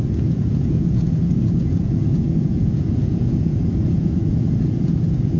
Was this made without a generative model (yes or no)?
no